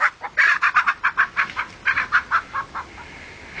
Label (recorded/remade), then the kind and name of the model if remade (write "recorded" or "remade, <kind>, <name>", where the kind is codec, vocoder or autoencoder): recorded